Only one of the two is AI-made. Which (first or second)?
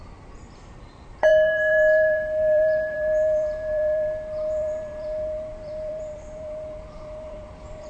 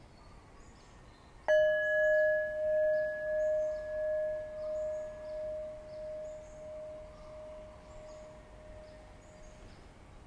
first